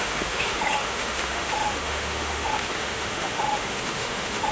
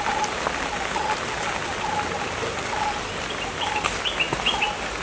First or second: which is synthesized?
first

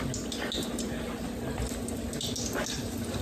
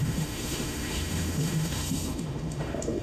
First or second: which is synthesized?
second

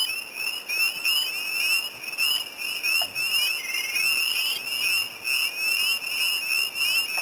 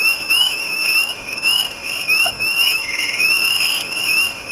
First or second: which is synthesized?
second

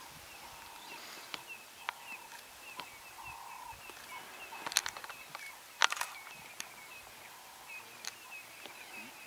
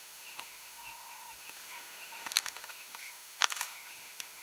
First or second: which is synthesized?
second